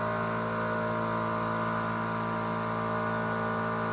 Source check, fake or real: real